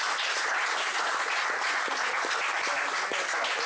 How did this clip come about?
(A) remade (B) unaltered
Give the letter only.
B